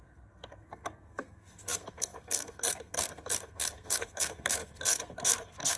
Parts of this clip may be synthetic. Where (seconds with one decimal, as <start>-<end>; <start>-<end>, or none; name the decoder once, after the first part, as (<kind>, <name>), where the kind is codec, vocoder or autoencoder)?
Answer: 0.0-5.8 (codec, SNAC)